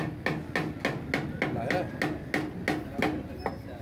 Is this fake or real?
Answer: real